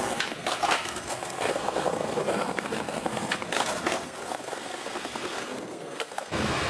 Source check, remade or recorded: remade